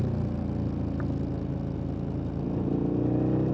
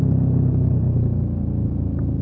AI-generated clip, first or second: second